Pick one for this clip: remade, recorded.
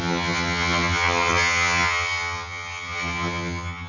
remade